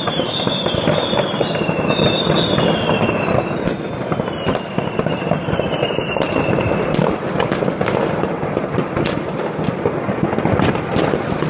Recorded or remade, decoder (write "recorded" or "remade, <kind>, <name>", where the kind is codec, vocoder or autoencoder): remade, vocoder, BigVGAN v2